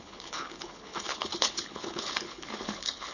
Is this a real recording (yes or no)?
no